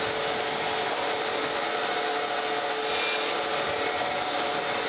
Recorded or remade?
recorded